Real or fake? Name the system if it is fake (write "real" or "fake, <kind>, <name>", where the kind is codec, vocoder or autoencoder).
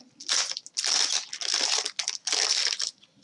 real